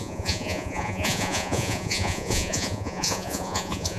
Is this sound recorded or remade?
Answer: remade